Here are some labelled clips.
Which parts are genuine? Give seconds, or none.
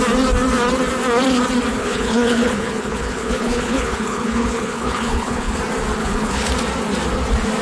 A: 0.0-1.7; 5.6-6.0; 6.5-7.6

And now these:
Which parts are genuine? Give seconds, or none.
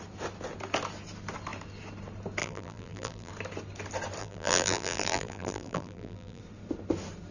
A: 0.0-2.4; 3.3-4.2; 6.4-7.3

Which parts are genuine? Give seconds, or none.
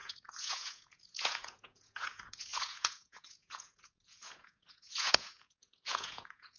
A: none